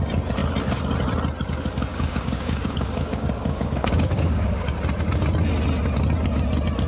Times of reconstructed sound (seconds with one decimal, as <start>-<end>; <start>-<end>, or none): 1.9-4.8